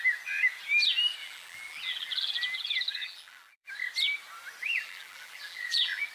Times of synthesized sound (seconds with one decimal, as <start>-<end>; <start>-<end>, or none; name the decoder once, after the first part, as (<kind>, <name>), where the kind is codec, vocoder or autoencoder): 1.2-3.7 (vocoder, BigVGAN v2); 4.6-6.1